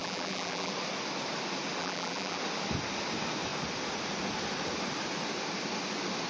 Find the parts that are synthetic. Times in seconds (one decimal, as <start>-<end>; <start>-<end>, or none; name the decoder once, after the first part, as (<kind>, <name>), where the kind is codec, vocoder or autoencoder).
0.0-0.7 (vocoder, BigVGAN v2); 1.8-2.4